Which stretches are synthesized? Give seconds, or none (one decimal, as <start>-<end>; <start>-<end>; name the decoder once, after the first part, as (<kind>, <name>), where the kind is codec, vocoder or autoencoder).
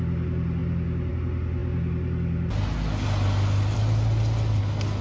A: none